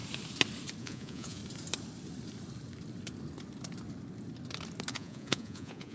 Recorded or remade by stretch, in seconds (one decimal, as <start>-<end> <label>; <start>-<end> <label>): 0.0-0.8 recorded; 0.8-1.4 remade; 1.4-4.9 recorded; 4.9-5.9 remade